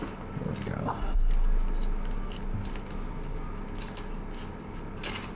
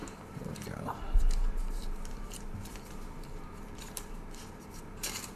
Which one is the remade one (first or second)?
second